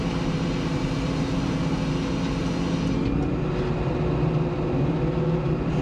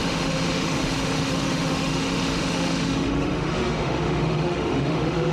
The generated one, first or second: second